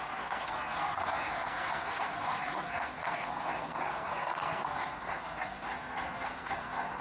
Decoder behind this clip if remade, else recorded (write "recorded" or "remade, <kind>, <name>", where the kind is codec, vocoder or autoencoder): remade, codec, SNAC